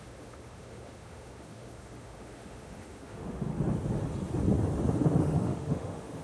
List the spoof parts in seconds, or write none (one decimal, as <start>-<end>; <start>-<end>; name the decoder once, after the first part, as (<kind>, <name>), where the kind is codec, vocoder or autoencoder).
0.0-3.5 (autoencoder, DAC-VAE); 5.2-6.2